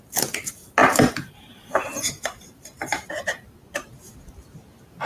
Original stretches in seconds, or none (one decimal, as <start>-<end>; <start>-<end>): 0.0-0.8; 3.9-5.1